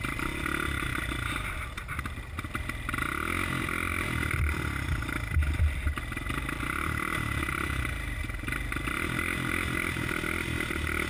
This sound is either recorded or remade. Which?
recorded